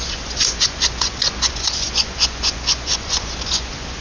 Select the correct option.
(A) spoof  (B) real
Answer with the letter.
A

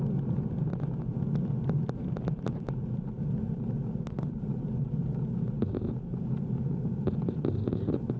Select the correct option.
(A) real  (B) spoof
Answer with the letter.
A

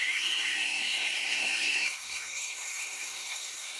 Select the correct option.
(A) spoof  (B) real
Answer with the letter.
A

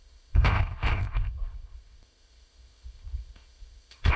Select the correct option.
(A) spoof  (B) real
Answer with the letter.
A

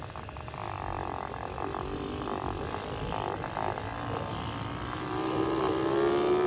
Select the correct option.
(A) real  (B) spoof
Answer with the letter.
A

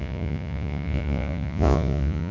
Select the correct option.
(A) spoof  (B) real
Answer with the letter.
A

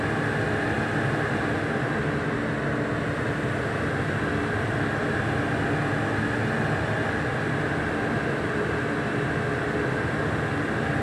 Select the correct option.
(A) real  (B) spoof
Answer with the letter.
A